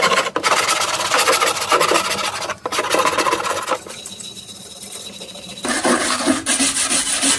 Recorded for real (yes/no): yes